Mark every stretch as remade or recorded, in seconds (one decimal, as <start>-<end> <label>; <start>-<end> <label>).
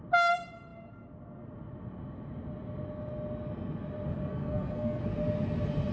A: 0.0-4.3 recorded; 4.3-5.0 remade; 5.0-5.9 recorded